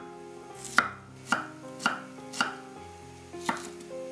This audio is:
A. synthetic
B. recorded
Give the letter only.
B